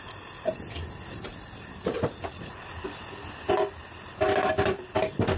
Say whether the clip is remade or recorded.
recorded